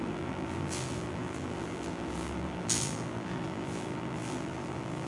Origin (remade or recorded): remade